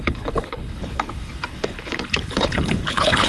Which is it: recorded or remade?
remade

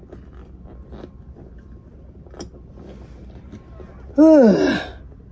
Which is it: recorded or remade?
recorded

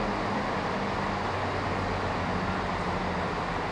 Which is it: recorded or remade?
recorded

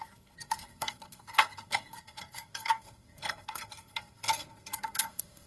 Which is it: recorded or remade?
remade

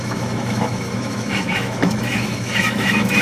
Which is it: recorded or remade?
remade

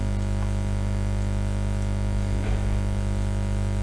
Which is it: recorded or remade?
recorded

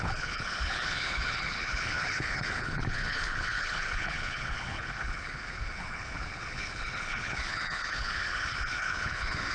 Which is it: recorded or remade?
remade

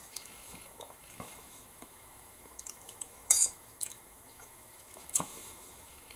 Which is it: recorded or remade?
remade